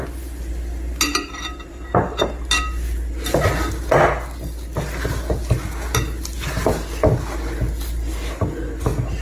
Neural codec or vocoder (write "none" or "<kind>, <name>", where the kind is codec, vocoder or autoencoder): none